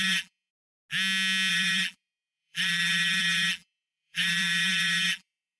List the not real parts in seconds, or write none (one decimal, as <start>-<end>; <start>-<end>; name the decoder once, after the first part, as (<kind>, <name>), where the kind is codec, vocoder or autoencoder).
0.0-0.5 (vocoder, BigVGAN v2); 1.5-5.6